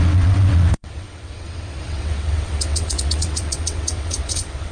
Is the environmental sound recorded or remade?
remade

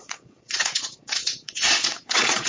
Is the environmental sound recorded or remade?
remade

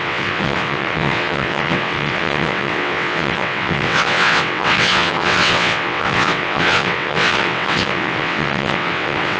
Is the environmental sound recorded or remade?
remade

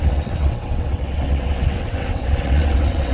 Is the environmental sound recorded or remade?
remade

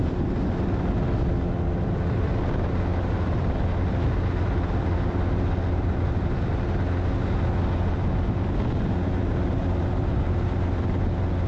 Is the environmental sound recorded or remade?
recorded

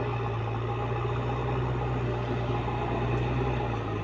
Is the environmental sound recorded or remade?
recorded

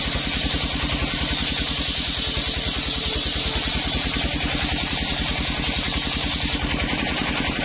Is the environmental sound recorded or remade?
recorded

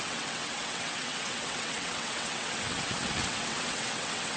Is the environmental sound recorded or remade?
remade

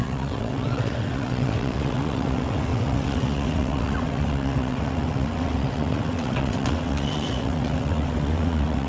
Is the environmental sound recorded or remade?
remade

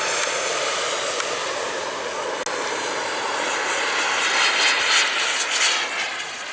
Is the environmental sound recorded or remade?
recorded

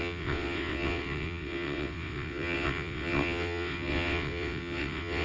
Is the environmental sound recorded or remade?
remade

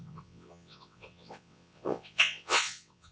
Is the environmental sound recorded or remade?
remade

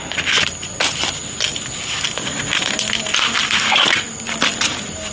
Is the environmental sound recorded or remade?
recorded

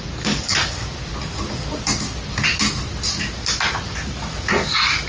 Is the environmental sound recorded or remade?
recorded